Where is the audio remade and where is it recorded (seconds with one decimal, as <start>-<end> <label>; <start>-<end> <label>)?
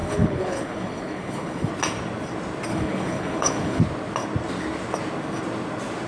0.0-1.7 remade; 1.7-2.7 recorded; 2.7-3.8 remade; 3.8-6.1 recorded